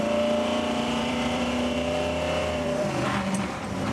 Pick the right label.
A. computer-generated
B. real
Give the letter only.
A